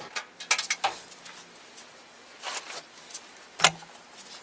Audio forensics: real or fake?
real